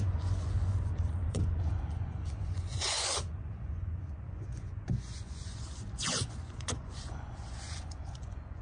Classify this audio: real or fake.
fake